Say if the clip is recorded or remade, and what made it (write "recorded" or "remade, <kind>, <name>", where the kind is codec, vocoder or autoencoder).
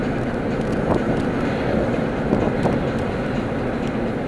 recorded